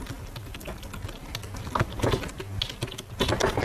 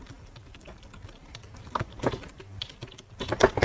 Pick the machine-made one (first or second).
second